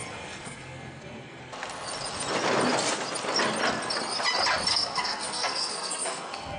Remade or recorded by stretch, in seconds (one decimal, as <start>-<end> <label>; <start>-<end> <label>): 0.0-1.4 remade; 1.4-4.7 recorded; 4.7-6.6 remade